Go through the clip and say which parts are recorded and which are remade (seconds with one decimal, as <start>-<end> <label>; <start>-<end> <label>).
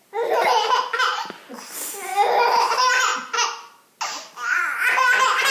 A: 0.0-5.5 recorded